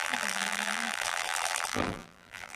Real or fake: fake